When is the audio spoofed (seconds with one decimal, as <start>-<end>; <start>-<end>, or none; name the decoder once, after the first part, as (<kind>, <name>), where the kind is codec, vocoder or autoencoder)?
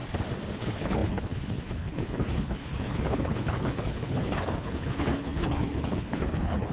0.6-6.7 (codec, HILCodec)